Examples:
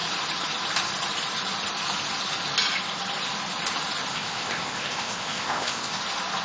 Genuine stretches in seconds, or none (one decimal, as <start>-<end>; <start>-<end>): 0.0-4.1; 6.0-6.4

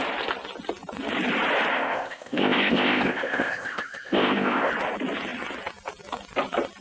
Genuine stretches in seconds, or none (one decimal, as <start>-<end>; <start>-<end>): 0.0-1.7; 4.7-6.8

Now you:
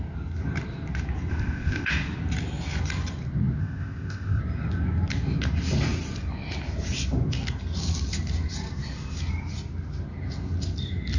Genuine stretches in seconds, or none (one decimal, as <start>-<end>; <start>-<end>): 0.0-1.3; 1.9-3.6; 4.4-11.2

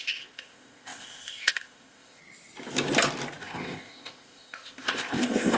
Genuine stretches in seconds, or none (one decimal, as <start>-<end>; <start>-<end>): 2.2-3.4

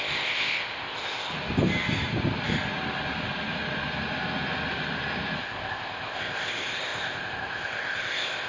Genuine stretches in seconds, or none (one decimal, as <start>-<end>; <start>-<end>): 1.3-5.4